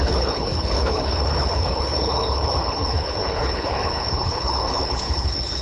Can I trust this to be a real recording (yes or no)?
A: no